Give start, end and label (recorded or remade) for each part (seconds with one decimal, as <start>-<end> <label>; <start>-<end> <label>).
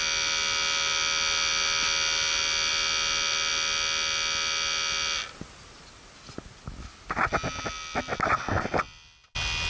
0.0-9.7 recorded